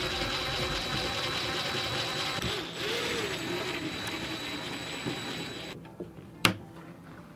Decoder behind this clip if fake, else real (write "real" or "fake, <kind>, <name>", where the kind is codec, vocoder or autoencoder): fake, vocoder, BigVGAN v2